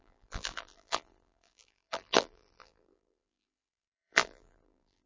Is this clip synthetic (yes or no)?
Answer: yes